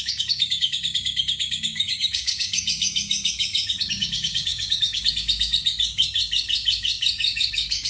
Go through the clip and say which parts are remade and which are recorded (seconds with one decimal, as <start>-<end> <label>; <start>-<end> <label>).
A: 0.0-7.9 remade